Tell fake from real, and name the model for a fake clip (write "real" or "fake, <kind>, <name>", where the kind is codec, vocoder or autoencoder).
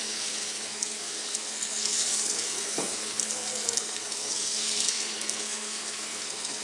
fake, codec, SNAC